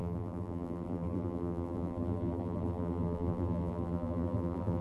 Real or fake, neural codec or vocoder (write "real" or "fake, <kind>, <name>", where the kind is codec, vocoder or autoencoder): fake, vocoder, BigVGAN v2